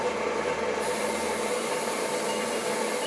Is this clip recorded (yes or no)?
yes